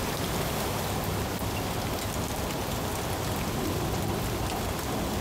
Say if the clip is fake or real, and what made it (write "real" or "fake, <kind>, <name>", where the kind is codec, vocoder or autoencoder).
real